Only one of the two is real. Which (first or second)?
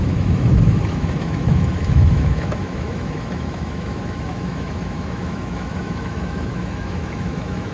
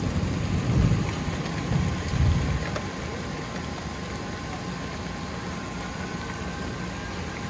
second